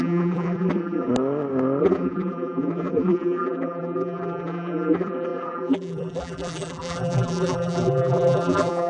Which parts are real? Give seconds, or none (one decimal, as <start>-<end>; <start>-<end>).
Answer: 1.1-1.8